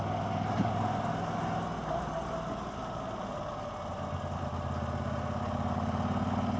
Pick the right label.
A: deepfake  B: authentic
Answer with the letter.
B